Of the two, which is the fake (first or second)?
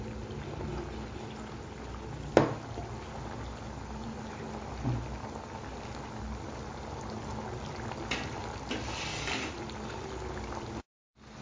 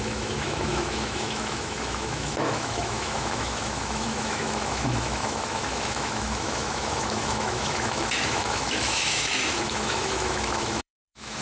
second